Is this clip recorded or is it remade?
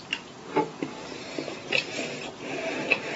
recorded